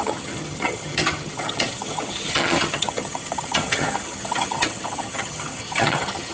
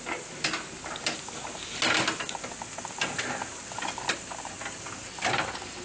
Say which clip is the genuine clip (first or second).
second